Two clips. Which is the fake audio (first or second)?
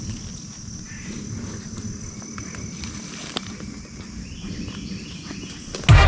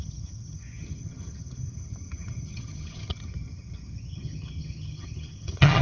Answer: second